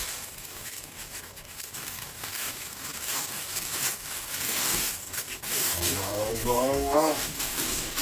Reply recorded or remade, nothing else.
remade